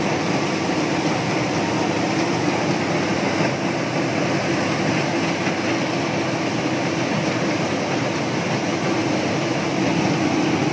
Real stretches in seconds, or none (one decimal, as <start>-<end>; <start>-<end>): 0.0-10.7